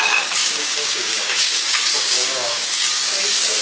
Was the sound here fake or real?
fake